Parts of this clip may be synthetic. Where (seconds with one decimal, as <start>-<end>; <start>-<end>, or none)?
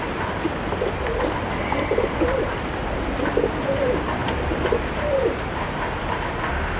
none